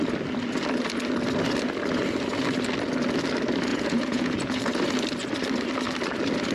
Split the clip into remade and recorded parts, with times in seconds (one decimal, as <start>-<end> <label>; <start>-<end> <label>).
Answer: 0.0-3.7 recorded; 3.7-4.6 remade; 4.6-6.5 recorded